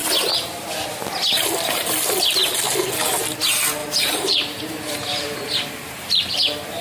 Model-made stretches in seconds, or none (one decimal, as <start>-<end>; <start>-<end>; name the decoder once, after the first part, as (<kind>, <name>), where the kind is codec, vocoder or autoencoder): 3.8-6.8 (vocoder, BigVGAN v2)